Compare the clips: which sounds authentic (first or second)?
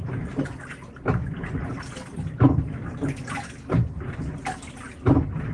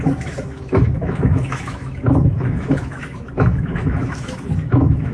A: first